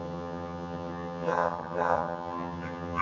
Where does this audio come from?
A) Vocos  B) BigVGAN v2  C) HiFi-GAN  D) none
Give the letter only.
C